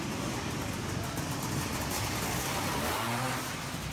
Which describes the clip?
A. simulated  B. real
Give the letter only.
B